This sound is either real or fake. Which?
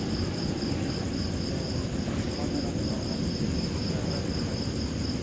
real